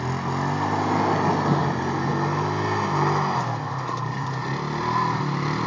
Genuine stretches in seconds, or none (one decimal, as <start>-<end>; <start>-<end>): 0.0-1.6; 2.1-5.7